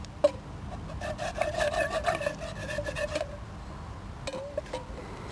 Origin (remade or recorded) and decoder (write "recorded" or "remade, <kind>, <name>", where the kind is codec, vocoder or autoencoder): recorded